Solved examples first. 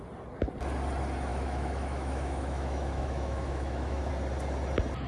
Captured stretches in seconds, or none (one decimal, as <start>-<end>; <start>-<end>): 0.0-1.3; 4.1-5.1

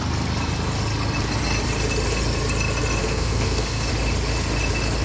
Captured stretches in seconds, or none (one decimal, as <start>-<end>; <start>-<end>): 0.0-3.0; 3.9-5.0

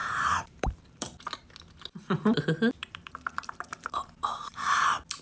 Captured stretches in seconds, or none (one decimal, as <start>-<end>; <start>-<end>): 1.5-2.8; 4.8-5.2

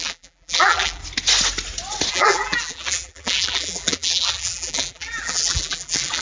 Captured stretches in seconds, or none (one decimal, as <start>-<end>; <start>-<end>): 1.0-2.1